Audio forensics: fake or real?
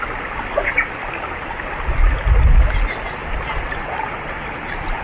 real